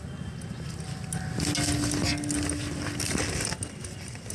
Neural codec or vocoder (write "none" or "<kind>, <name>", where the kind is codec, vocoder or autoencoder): none